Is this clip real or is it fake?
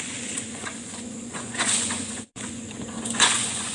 fake